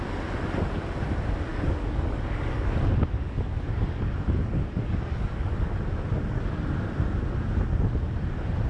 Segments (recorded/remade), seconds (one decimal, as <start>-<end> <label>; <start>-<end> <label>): 0.0-1.5 recorded; 1.5-5.7 remade; 5.7-8.7 recorded